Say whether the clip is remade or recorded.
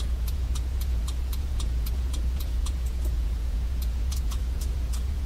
remade